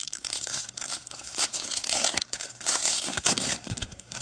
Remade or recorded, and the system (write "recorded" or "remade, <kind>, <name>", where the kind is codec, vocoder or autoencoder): remade, codec, SNAC